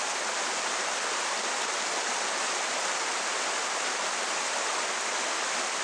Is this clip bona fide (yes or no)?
yes